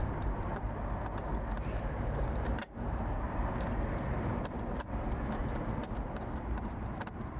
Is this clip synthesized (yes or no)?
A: yes